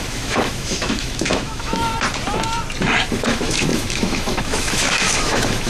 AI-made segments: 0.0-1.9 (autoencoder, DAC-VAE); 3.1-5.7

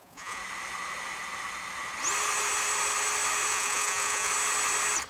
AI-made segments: 0.0-0.4 (vocoder, Vocos); 3.5-4.3